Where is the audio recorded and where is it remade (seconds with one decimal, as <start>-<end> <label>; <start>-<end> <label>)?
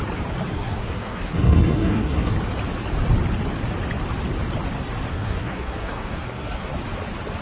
0.0-0.5 recorded; 0.5-2.3 remade; 2.3-5.1 recorded; 5.1-6.7 remade; 6.7-7.4 recorded